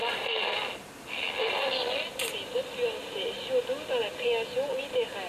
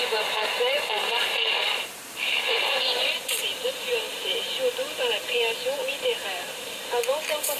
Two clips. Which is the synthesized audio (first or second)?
second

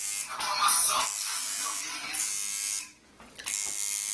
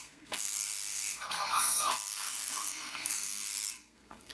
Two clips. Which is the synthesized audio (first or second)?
second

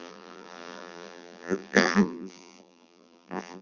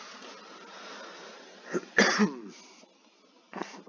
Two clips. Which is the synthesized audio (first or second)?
first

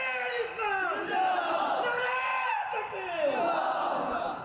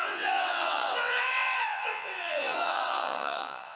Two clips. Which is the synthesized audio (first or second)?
second